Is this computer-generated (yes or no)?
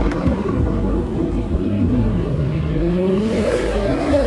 yes